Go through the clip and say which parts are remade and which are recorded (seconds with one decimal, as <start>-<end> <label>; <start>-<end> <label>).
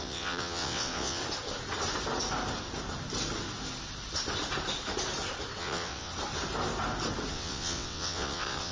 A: 0.0-1.2 remade; 1.2-5.6 recorded; 5.6-6.1 remade; 6.1-7.3 recorded; 7.3-8.7 remade